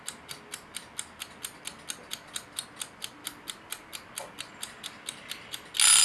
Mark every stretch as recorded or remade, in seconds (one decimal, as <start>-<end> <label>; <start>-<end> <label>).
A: 0.0-6.0 recorded